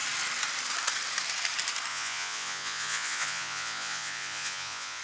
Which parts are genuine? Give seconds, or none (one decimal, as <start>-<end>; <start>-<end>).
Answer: 0.0-1.9